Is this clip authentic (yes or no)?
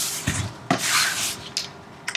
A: yes